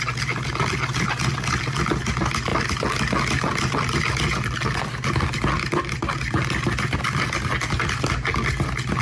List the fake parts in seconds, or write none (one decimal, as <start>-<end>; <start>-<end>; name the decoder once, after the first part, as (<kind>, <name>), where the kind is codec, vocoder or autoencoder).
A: none